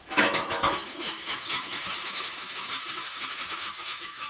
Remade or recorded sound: remade